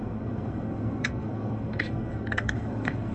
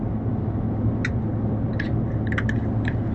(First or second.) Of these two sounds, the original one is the second